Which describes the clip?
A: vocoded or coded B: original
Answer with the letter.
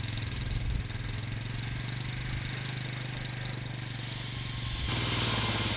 B